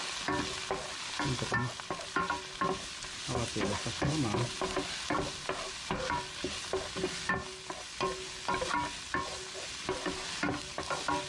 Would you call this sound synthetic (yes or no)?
no